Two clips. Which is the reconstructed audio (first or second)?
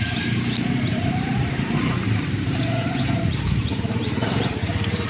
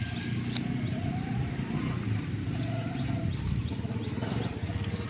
first